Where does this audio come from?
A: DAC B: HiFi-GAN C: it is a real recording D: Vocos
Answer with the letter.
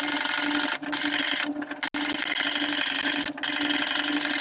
C